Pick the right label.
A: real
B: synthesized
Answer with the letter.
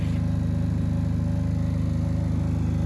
A